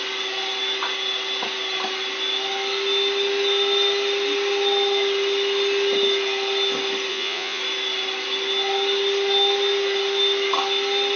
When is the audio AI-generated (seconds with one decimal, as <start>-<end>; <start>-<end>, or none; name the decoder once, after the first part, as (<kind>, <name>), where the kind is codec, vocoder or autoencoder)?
7.1-7.6 (vocoder, Vocos)